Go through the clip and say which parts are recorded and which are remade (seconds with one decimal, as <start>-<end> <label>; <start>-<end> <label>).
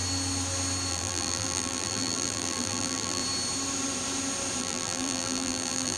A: 0.0-0.9 recorded; 0.9-3.2 remade; 3.2-4.6 recorded; 4.6-6.0 remade